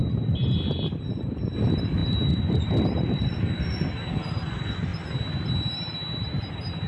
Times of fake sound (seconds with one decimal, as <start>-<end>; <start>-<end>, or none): none